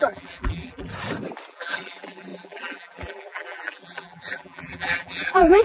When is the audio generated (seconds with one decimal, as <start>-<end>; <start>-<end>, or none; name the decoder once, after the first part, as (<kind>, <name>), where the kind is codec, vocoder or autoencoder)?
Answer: 0.0-0.9 (vocoder, BigVGAN v2); 1.5-5.6